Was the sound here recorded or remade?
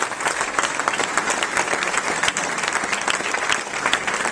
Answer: recorded